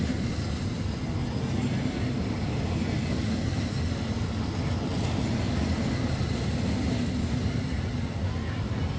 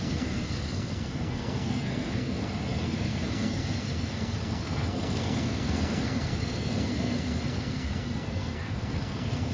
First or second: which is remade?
second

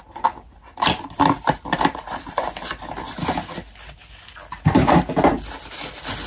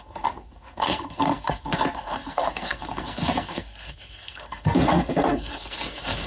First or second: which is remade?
second